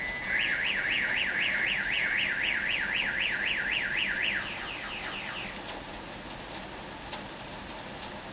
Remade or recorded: recorded